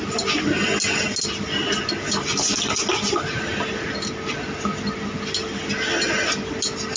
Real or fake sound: real